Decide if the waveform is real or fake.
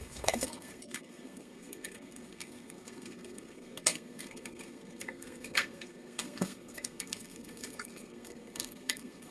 fake